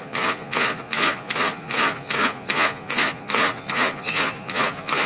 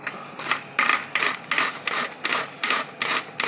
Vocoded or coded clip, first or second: first